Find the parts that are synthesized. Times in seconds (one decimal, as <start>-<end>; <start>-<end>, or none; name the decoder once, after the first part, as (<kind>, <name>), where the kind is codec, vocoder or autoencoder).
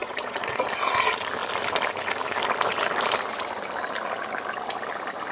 0.0-0.6 (vocoder, Vocos)